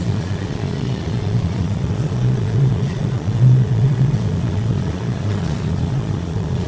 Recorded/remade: remade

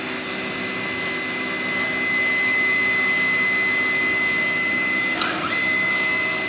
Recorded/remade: recorded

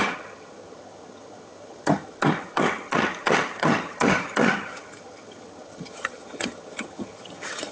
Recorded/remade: remade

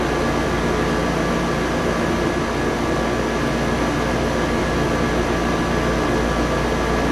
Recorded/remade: recorded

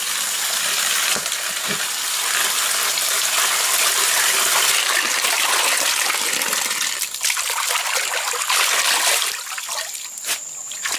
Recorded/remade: recorded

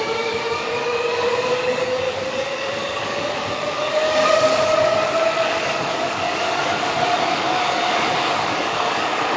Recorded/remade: remade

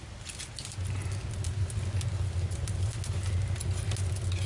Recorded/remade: recorded